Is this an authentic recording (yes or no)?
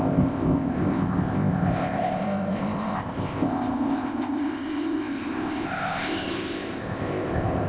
no